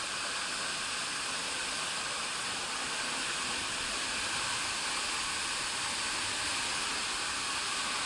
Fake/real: real